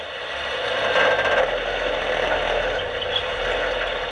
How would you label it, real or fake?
real